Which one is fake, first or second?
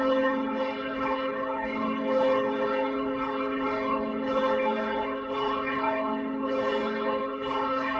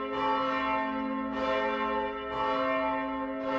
first